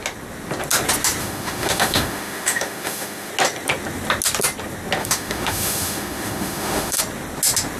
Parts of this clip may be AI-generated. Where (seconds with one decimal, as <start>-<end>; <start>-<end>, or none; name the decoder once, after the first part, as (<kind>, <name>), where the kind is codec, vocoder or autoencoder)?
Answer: 1.2-3.3 (autoencoder, DAC-VAE); 5.0-7.0